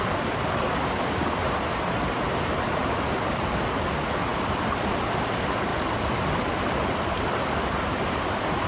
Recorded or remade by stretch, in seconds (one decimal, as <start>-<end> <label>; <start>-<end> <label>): 0.0-4.3 recorded; 4.3-5.3 remade; 5.3-5.7 recorded; 5.7-7.4 remade; 7.4-8.7 recorded